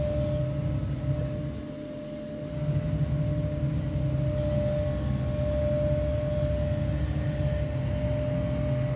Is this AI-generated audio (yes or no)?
no